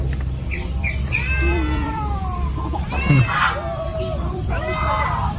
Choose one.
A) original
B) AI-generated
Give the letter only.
B